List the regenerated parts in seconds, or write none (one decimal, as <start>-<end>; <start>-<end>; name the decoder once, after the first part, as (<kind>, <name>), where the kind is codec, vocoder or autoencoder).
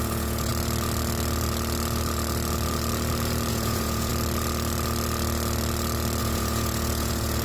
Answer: 0.0-0.5 (vocoder, Vocos); 3.5-4.1; 6.2-7.4